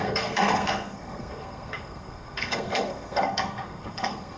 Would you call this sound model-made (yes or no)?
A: yes